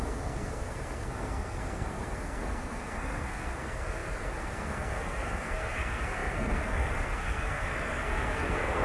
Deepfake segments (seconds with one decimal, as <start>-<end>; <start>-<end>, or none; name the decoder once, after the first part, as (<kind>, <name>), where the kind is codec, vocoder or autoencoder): 0.0-8.8 (codec, SNAC)